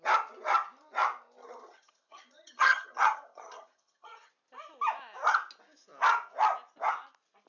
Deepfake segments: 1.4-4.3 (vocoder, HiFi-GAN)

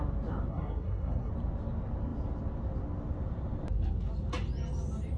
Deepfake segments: 0.5-1.3 (codec, SNAC)